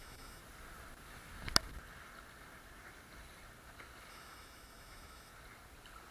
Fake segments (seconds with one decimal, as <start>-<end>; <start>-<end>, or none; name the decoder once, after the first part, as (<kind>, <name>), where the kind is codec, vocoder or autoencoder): 0.0-0.4 (autoencoder, DAC-VAE); 4.1-5.3